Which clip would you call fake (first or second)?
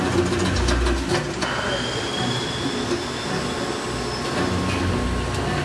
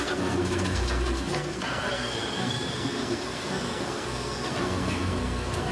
second